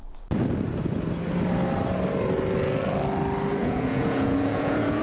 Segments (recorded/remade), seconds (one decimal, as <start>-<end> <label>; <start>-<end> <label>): 0.0-3.6 recorded; 3.6-5.0 remade